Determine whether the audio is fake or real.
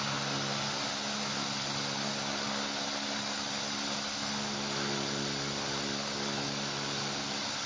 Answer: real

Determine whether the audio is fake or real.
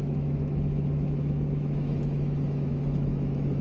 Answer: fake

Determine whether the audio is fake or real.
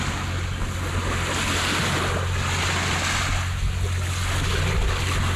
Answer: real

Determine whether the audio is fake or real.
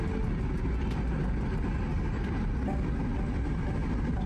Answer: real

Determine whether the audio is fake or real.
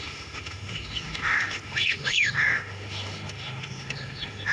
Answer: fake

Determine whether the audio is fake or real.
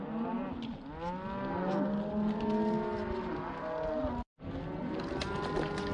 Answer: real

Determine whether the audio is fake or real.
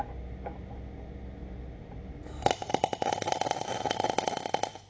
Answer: real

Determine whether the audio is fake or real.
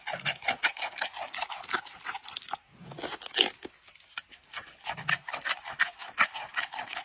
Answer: real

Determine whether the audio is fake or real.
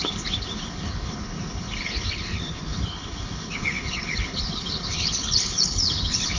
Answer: fake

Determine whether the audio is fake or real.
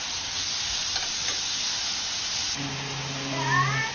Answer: real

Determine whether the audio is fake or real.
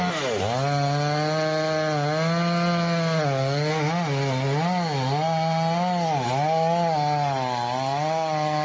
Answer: real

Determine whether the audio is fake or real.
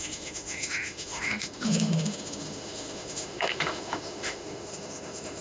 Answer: fake